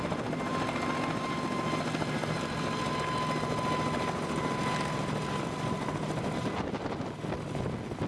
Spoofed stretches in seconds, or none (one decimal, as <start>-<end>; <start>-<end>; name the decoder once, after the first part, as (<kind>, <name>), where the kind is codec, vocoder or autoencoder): none